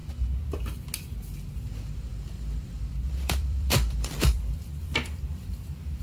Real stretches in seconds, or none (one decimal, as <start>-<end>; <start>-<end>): 0.0-1.5